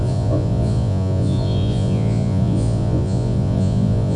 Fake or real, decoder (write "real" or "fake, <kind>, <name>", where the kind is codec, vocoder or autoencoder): fake, vocoder, Vocos